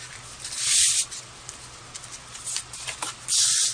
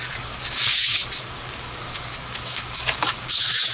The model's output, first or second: second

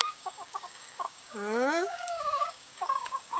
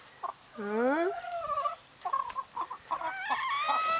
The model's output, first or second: first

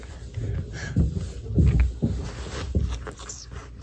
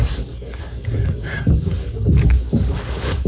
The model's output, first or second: second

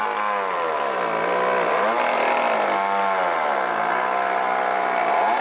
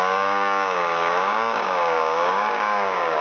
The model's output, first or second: second